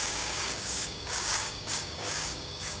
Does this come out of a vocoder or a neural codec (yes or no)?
yes